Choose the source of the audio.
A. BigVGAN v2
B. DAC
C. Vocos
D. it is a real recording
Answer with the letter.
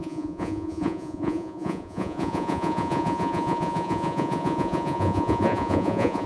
C